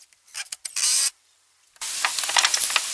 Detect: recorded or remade recorded